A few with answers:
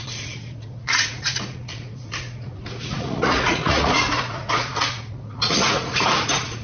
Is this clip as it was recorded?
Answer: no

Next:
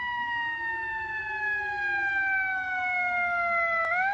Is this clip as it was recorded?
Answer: yes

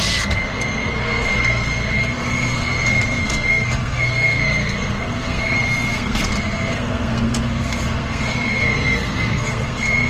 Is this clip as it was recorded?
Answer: no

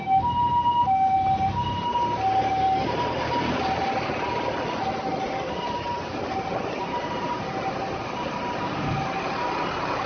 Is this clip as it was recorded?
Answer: yes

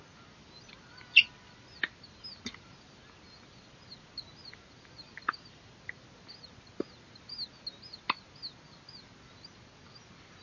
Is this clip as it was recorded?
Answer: yes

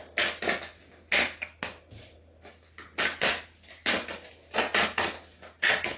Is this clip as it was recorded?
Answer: yes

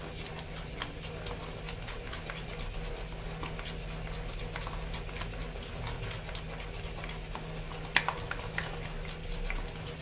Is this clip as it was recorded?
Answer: yes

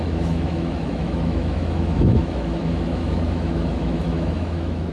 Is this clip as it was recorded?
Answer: no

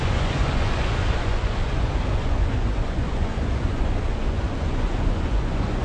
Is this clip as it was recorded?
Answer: no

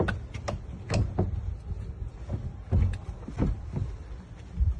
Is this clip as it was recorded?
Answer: yes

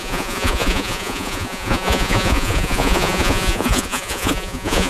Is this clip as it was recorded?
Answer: no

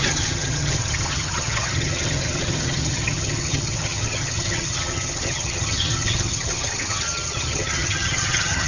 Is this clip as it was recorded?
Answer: no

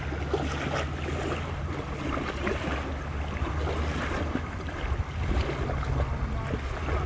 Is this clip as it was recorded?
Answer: yes